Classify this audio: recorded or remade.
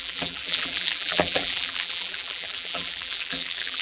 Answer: remade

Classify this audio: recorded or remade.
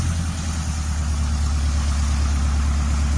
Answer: recorded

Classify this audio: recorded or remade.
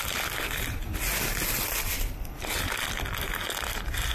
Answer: recorded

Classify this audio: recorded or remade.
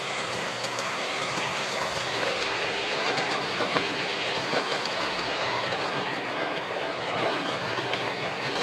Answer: remade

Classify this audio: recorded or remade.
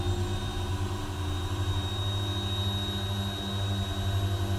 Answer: recorded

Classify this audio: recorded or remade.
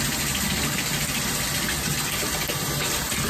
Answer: recorded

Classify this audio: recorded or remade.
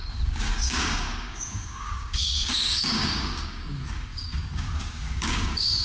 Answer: remade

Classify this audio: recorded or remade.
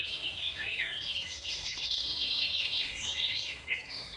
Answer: remade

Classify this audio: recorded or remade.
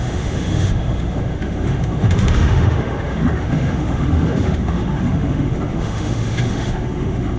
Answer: remade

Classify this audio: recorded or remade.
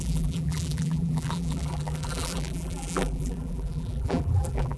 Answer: remade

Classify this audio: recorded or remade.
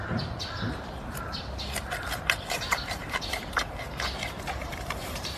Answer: remade